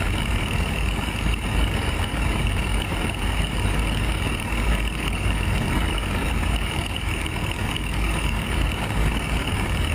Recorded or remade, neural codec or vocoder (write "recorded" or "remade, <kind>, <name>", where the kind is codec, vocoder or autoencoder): remade, codec, DAC